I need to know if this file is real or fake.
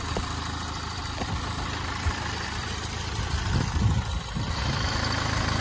fake